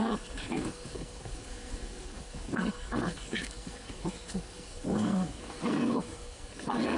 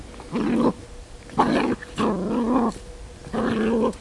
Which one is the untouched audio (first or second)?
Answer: second